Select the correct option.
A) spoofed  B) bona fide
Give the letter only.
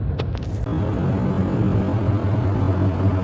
B